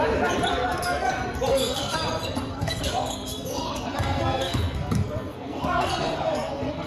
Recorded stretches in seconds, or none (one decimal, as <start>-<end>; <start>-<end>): 0.0-0.5; 1.1-1.5; 2.0-2.5

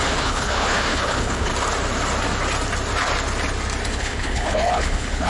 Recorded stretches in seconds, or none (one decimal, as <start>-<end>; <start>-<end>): 1.5-3.9

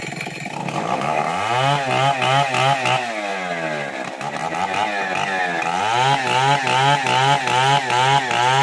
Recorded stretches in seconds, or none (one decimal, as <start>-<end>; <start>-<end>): 0.0-0.6; 1.2-8.6

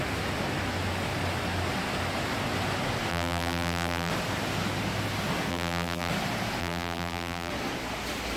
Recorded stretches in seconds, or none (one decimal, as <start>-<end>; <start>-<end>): 0.0-3.1; 4.1-5.5; 6.1-6.6; 7.5-8.4

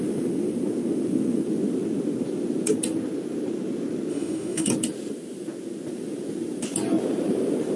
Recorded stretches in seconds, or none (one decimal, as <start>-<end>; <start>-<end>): 0.0-4.1; 4.7-7.8

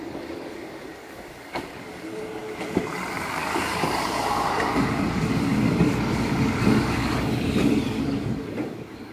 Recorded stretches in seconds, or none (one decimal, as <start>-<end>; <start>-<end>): none